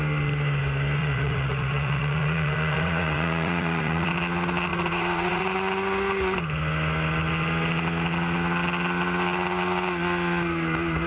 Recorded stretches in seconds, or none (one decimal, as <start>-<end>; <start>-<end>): 0.0-1.0; 4.1-4.7; 5.4-11.1